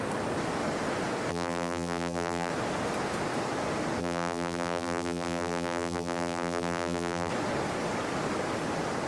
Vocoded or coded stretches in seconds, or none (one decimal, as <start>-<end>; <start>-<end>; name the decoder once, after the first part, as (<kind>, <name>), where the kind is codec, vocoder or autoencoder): 1.3-2.5 (vocoder, BigVGAN v2); 4.0-7.3